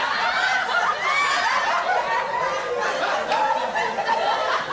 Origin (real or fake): real